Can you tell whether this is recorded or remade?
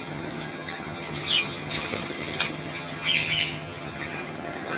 remade